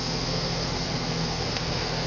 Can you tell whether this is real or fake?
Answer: fake